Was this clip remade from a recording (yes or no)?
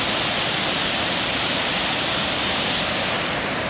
no